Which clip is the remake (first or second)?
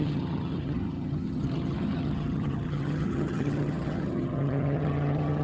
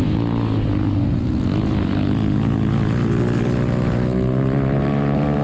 first